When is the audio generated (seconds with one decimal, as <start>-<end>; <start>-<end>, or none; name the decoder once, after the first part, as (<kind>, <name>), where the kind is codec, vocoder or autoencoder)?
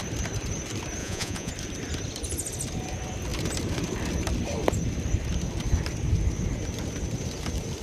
1.0-1.5 (vocoder, Vocos)